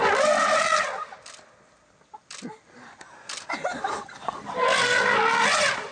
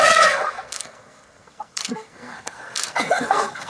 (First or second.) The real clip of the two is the first